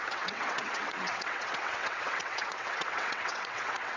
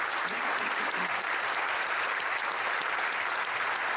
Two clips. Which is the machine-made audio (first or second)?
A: first